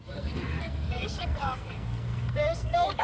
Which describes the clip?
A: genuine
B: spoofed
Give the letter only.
B